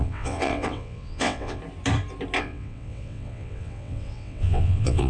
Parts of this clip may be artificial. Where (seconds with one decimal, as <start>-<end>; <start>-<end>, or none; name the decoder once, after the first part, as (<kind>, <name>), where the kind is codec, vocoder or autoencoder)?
0.0-1.6 (vocoder, WaveNeXt); 2.4-5.1